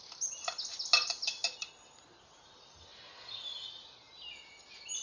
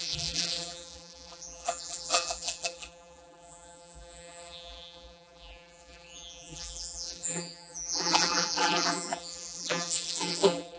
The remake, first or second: second